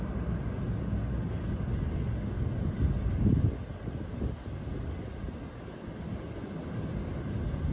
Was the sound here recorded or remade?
recorded